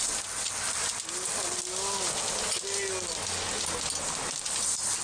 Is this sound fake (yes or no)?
no